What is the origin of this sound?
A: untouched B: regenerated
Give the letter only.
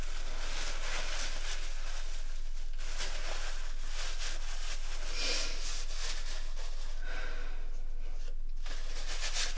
A